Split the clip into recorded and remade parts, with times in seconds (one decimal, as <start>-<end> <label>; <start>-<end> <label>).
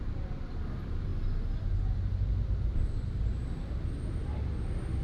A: 0.0-5.0 recorded